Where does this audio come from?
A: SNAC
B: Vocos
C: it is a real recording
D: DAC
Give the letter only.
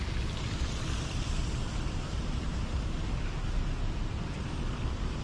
C